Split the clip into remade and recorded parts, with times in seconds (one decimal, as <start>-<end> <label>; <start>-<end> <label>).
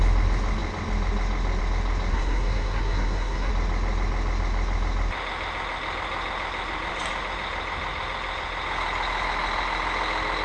0.0-2.1 recorded; 2.1-3.5 remade; 3.5-10.4 recorded